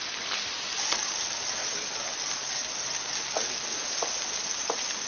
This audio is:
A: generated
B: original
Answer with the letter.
B